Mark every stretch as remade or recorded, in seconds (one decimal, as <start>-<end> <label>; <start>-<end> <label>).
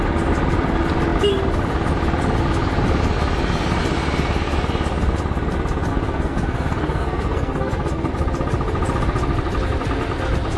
0.0-5.9 recorded; 5.9-8.1 remade; 8.1-10.6 recorded